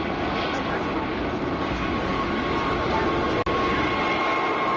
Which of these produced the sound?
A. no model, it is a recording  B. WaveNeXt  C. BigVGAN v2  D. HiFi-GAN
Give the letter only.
A